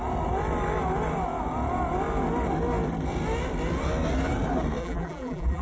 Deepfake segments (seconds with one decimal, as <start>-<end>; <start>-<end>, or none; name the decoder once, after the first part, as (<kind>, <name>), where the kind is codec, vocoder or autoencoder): 4.8-5.6 (vocoder, BigVGAN v2)